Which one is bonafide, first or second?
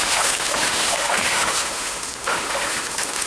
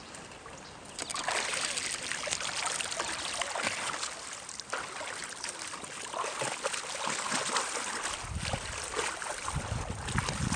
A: second